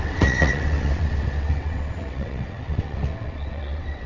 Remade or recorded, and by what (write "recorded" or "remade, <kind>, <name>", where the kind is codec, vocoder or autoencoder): remade, vocoder, WaveNeXt